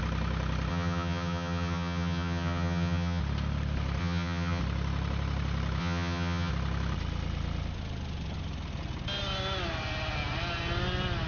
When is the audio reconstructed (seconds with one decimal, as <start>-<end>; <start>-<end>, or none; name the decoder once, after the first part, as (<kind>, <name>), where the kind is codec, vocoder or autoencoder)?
0.7-3.2 (vocoder, HiFi-GAN); 4.0-4.6; 5.8-6.5